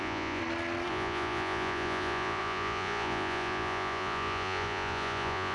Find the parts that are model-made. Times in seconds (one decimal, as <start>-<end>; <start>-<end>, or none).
0.0-0.4; 0.9-5.5